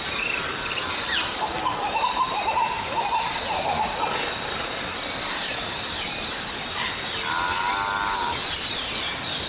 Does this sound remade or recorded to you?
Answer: recorded